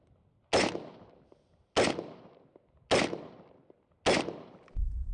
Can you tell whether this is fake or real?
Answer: real